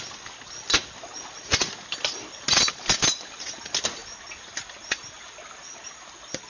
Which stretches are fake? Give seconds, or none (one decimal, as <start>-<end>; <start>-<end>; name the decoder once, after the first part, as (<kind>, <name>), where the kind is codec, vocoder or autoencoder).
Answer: none